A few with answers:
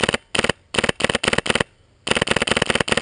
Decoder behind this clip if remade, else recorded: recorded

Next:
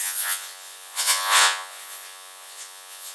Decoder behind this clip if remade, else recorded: remade, vocoder, Vocos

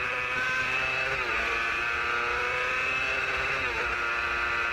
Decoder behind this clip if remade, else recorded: remade, vocoder, BigVGAN v2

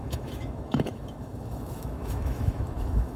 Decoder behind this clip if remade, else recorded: remade, autoencoder, DAC-VAE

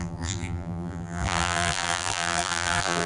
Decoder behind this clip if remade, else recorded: remade, vocoder, BigVGAN v2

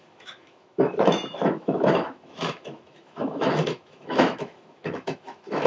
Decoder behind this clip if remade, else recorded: remade, autoencoder, DAC-VAE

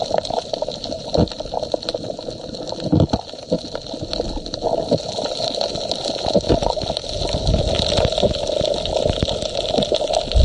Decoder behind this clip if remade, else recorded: recorded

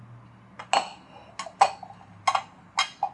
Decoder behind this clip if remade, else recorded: recorded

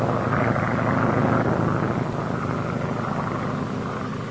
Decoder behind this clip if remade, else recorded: recorded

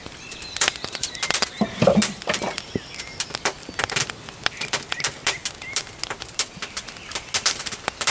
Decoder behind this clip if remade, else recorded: recorded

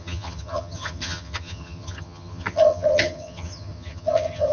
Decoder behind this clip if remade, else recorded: remade, vocoder, HiFi-GAN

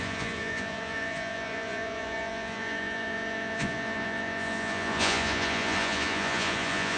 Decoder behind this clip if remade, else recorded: remade, vocoder, Vocos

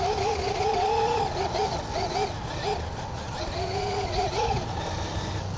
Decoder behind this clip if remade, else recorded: recorded